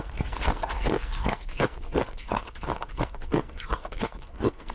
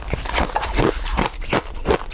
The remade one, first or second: first